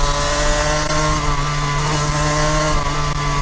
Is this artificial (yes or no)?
no